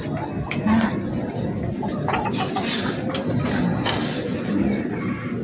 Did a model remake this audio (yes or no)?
no